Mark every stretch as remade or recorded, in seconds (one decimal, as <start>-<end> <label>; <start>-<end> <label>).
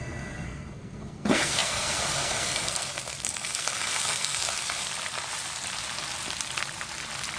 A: 0.0-4.8 remade; 4.8-7.4 recorded